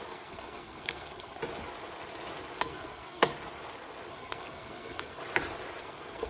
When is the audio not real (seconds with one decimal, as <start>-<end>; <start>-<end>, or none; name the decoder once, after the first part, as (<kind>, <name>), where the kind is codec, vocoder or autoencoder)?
0.0-1.4 (codec, SNAC); 2.6-3.3; 4.1-5.2; 5.8-6.3